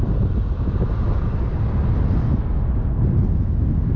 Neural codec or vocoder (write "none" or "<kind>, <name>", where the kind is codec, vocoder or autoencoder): none